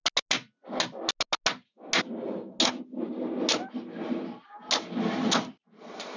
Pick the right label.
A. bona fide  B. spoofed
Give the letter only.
A